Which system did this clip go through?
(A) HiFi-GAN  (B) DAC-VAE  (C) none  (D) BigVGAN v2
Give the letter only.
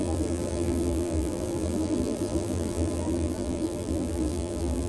D